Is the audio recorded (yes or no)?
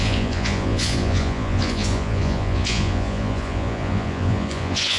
no